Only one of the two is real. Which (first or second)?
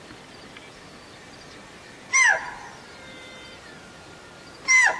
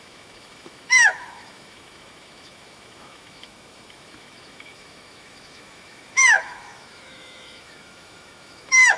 first